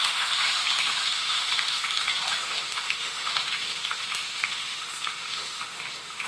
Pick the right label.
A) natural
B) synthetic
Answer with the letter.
B